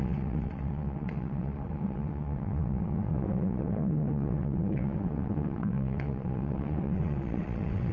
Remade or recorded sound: remade